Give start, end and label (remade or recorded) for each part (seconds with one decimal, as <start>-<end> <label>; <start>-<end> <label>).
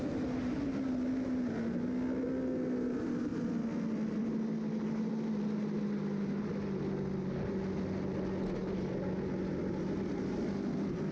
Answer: 0.0-11.1 recorded